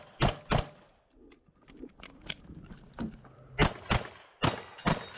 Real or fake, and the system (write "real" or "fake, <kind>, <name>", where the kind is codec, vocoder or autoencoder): real